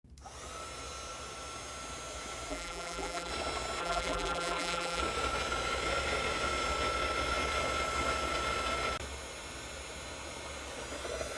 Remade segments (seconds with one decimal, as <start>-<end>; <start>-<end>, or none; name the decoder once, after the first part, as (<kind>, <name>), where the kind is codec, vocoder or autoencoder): 2.5-3.3 (vocoder, BigVGAN v2); 3.8-5.0